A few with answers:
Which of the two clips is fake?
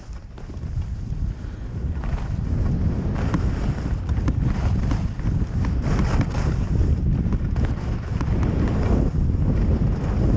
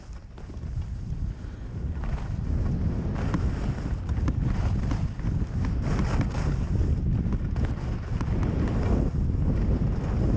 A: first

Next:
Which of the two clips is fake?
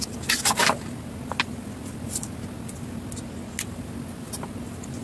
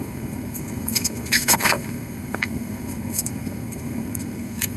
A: second